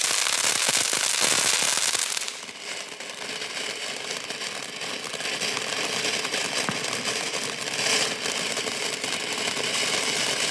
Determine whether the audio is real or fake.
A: real